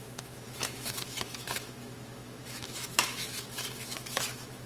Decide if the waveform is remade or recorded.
remade